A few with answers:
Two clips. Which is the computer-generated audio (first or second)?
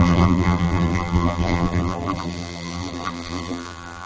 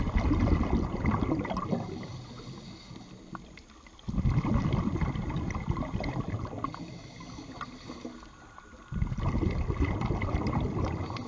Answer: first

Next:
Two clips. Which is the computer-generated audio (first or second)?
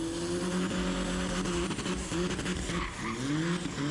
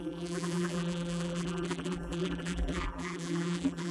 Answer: second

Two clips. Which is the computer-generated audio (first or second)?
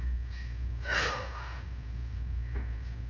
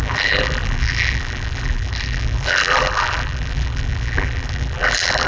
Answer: second